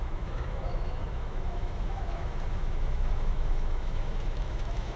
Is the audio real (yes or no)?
no